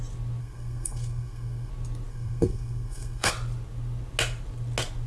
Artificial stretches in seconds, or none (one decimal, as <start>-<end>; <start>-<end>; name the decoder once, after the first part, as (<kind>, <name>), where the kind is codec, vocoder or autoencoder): 0.4-1.7 (codec, SNAC); 2.1-3.3